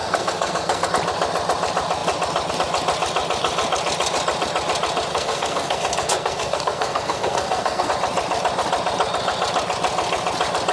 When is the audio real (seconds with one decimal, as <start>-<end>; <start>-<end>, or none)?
0.9-5.1; 7.9-10.7